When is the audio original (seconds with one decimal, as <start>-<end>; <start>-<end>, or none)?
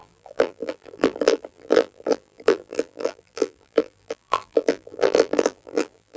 none